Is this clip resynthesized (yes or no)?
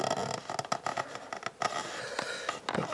no